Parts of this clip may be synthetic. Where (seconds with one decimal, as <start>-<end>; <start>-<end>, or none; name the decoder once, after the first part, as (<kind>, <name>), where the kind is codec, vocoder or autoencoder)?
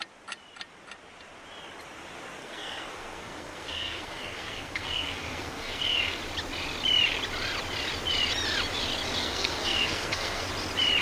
2.4-6.2 (codec, SNAC); 9.2-10.5